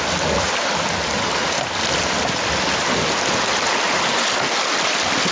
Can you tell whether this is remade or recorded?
recorded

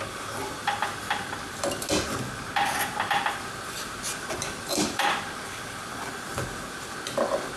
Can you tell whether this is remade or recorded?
recorded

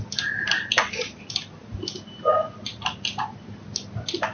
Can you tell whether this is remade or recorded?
recorded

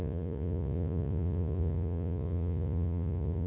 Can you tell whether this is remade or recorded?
remade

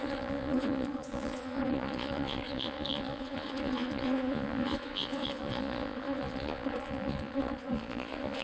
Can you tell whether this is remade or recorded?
remade